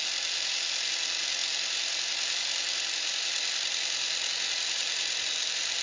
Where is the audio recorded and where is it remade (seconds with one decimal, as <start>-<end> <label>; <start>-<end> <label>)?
0.0-5.8 recorded